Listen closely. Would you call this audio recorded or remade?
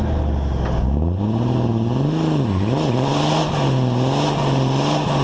recorded